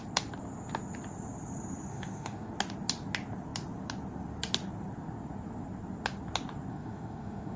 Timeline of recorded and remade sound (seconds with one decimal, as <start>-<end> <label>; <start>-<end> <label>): 0.0-1.9 recorded; 1.9-2.5 remade; 2.5-6.7 recorded; 6.7-7.6 remade